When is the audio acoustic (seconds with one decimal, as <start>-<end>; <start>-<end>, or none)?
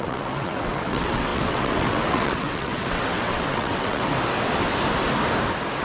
4.1-5.8